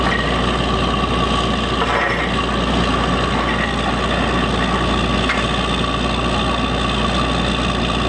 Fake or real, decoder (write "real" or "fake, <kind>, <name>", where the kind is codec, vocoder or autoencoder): real